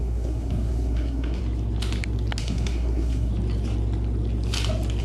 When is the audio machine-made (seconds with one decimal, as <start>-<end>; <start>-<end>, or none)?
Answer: 0.0-1.4; 2.4-3.3